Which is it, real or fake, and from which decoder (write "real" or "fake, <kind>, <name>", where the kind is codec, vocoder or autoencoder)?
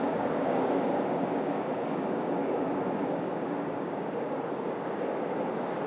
fake, codec, DAC